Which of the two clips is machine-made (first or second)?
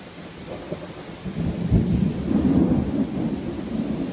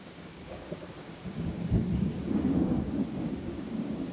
second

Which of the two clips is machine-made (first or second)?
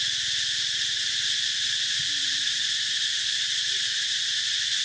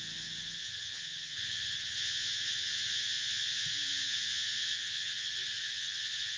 second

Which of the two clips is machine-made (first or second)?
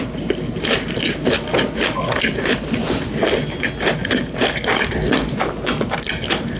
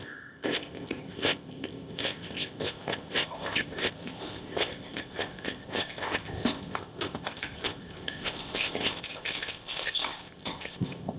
second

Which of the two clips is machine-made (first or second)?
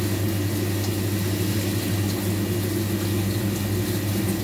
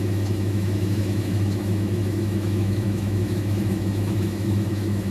second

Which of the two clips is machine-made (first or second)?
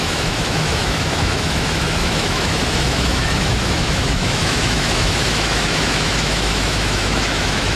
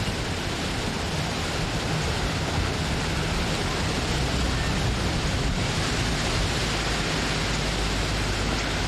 first